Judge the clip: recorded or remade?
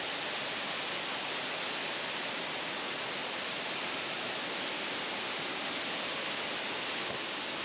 recorded